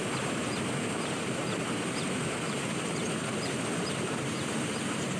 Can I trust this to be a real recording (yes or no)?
no